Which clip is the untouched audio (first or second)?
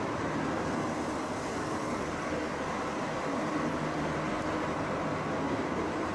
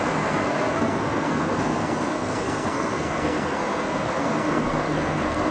first